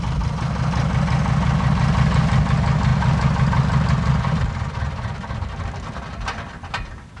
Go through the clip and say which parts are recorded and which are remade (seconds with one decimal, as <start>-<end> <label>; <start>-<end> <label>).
0.0-7.2 recorded